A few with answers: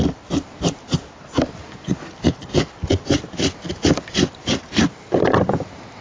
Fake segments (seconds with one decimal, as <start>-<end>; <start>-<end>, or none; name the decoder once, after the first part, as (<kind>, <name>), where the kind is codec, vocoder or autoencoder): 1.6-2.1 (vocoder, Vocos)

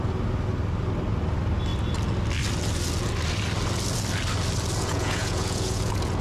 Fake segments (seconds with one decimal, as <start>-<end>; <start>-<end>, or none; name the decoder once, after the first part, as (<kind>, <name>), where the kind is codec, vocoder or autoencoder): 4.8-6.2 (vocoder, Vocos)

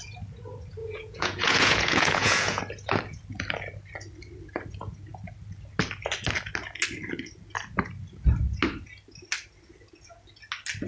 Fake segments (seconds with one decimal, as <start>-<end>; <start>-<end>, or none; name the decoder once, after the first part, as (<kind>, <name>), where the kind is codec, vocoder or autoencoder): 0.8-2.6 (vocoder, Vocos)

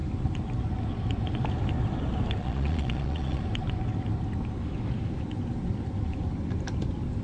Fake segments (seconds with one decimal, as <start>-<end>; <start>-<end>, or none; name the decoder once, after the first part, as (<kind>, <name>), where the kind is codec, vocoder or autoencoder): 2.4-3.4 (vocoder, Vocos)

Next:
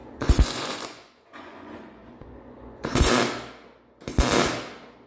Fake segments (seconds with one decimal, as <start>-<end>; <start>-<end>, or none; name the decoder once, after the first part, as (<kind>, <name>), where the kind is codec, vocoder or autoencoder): 0.0-3.1 (vocoder, Vocos)